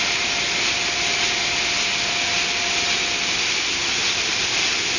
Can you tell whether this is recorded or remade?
recorded